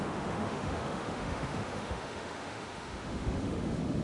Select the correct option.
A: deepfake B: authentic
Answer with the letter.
A